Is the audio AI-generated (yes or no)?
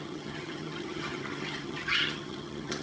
yes